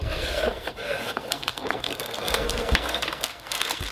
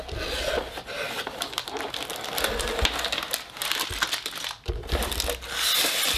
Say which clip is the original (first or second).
second